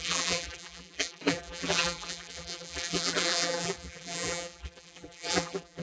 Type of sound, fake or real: fake